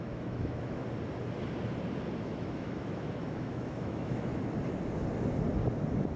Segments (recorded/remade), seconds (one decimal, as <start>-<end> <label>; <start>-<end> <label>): 0.0-0.8 remade; 0.8-2.2 recorded; 2.2-4.3 remade; 4.3-6.2 recorded